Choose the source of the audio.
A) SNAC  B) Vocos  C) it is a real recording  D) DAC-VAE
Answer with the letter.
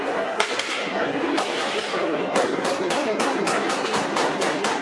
A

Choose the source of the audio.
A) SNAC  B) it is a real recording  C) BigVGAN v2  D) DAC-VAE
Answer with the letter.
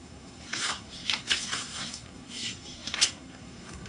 A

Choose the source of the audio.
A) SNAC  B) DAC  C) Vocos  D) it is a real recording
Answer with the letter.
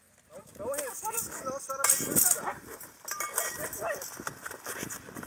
D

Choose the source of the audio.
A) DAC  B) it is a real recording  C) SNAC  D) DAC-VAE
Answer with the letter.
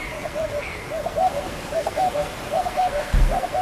C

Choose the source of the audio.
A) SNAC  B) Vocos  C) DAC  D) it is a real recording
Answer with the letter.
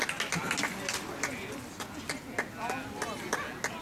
D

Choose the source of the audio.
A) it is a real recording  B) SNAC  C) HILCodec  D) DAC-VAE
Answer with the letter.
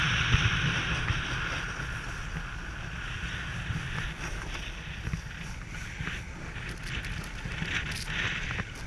A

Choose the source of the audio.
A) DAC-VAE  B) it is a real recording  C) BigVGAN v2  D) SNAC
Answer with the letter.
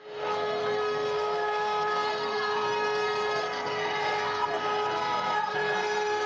D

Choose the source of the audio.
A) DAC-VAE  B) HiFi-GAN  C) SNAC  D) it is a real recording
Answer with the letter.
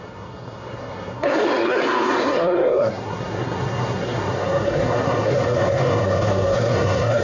C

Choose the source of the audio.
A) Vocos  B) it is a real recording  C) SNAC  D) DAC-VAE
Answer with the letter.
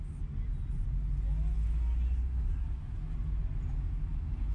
B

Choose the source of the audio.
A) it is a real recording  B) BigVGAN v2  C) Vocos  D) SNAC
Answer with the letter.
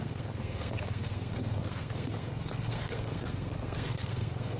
D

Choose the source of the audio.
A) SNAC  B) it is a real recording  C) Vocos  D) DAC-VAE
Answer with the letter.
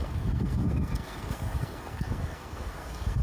A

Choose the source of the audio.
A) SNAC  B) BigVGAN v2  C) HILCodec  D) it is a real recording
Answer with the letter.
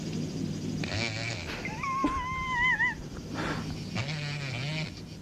D